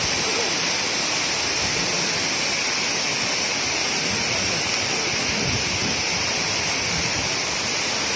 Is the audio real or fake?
real